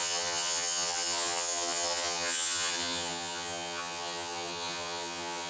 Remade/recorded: remade